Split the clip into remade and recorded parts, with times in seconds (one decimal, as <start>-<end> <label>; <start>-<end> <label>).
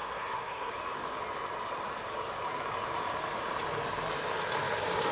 0.0-0.7 remade; 0.7-5.1 recorded